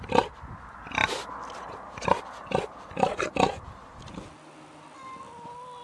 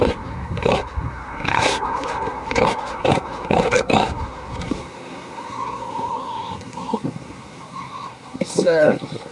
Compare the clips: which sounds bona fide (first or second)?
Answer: first